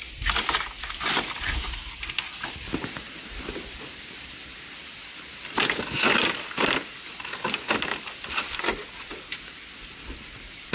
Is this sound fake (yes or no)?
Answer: no